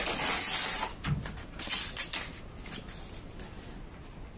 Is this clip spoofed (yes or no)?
no